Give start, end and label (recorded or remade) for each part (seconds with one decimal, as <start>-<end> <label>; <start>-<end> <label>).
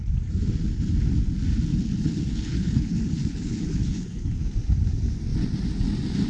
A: 0.0-1.7 recorded; 1.7-4.4 remade; 4.4-6.3 recorded